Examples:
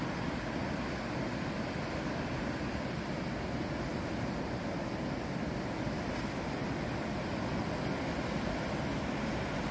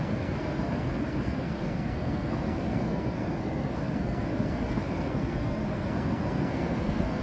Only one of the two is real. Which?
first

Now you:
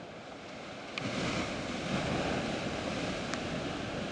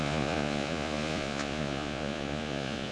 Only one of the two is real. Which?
first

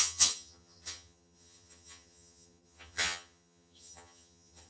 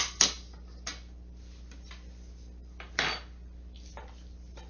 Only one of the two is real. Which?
second